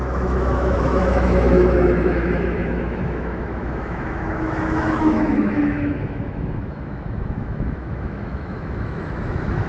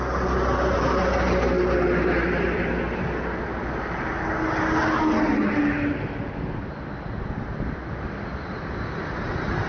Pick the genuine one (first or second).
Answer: second